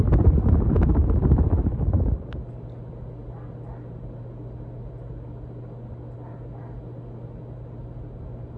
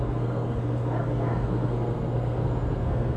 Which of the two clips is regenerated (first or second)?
second